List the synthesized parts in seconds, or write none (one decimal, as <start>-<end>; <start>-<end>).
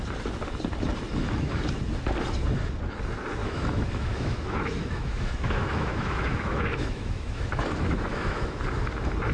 3.4-8.6